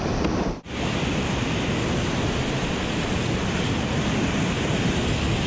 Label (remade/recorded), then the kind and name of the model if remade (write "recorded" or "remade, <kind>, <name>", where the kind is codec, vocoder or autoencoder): recorded